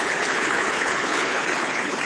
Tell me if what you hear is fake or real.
fake